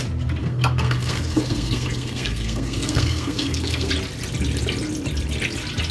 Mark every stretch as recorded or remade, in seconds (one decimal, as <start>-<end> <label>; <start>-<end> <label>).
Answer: 0.0-0.4 recorded; 0.4-3.9 remade; 3.9-5.9 recorded